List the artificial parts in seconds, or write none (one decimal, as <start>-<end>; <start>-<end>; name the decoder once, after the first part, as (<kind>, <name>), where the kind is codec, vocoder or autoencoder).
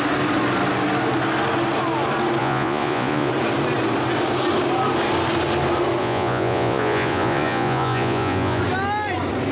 2.4-3.3 (vocoder, Vocos); 6.0-8.6